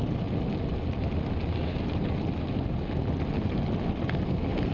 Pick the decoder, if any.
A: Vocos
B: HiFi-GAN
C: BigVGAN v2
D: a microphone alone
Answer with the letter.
D